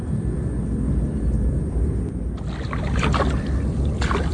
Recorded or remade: recorded